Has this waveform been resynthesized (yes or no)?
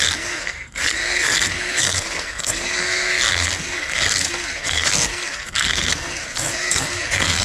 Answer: yes